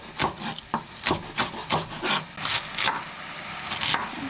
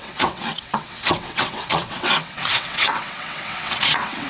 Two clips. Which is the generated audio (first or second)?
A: second